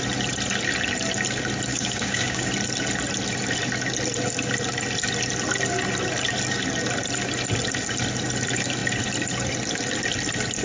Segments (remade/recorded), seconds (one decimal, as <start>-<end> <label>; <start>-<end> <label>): 0.0-1.7 recorded; 1.7-2.5 remade; 2.5-10.6 recorded